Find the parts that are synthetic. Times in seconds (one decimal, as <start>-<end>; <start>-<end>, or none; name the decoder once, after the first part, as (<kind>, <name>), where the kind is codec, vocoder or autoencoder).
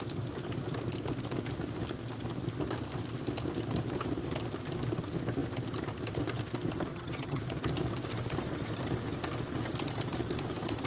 6.9-7.4 (vocoder, HiFi-GAN)